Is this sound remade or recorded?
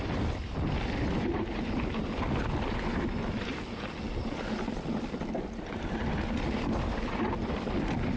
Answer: recorded